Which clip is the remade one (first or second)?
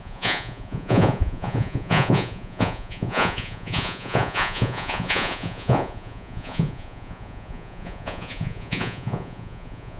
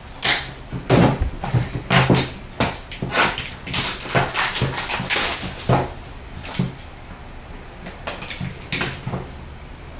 first